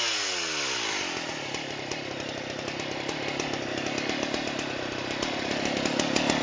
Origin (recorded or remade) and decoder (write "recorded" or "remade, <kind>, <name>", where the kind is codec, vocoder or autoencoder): recorded